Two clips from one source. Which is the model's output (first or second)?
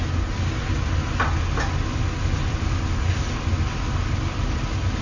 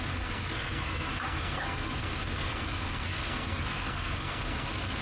second